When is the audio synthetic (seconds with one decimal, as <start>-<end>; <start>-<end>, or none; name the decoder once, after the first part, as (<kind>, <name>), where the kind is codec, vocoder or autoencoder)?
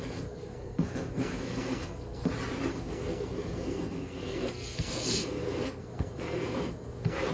0.0-2.3 (codec, SNAC); 2.7-7.3